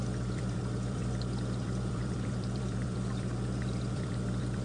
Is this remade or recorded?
remade